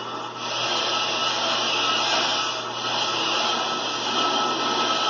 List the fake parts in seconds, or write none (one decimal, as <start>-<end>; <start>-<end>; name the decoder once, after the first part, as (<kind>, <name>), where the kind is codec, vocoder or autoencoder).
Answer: none